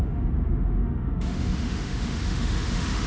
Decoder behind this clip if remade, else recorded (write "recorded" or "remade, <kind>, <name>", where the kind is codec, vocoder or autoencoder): remade, autoencoder, DAC-VAE